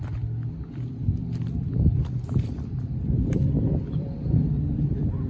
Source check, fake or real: fake